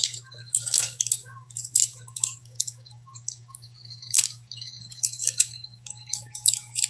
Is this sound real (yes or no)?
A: no